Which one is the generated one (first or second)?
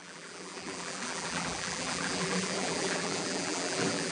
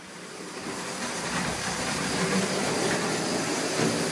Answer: first